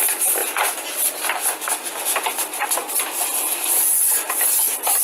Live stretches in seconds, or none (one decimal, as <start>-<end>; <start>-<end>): 0.0-5.0